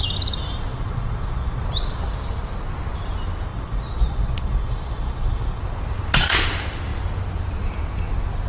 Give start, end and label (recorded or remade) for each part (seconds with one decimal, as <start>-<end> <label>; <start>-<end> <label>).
0.0-0.7 recorded; 0.7-1.6 remade; 1.6-3.5 recorded; 3.5-5.6 remade; 5.6-8.5 recorded